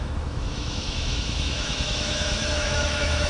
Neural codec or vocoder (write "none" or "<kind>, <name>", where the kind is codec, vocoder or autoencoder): autoencoder, DAC-VAE